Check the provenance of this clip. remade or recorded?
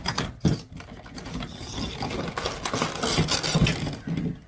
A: recorded